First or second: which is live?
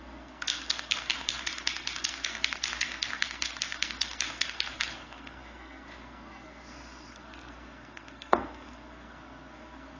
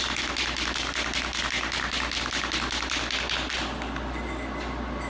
second